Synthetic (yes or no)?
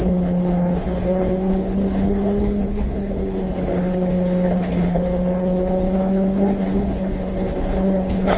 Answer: yes